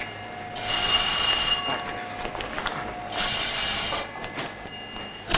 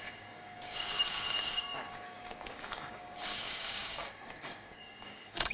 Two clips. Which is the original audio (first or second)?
first